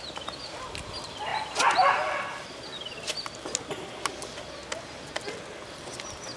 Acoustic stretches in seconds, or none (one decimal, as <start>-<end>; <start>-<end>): 0.0-6.4